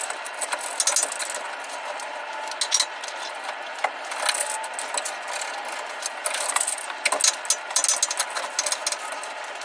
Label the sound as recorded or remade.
recorded